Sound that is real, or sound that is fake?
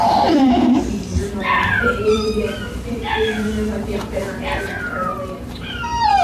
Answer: fake